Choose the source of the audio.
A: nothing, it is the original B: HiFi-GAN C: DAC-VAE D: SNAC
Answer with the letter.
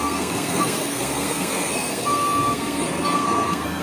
D